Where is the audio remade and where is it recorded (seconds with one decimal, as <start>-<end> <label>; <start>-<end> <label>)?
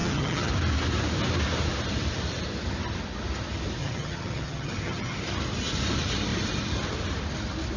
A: 0.0-0.5 remade; 0.5-3.8 recorded; 3.8-5.2 remade; 5.2-7.8 recorded